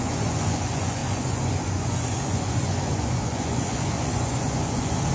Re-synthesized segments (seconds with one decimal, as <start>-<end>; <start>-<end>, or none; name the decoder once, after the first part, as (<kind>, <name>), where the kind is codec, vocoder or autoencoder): 0.0-5.1 (vocoder, Vocos)